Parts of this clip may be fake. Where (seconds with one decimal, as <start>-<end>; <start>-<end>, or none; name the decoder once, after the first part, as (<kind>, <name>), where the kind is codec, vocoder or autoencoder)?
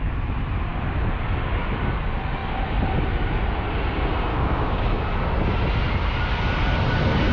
4.3-5.0 (codec, DAC)